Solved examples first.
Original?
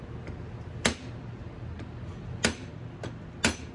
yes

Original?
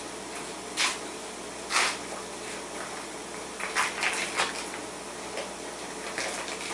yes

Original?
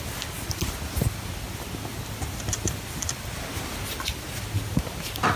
yes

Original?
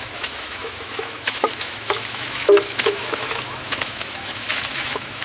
no